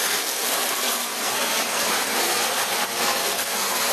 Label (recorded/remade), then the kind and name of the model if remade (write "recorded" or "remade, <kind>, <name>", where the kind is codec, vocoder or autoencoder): remade, codec, SNAC